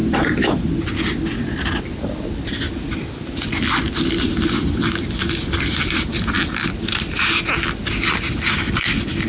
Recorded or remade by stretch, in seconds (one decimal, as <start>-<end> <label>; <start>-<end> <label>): 0.0-9.3 recorded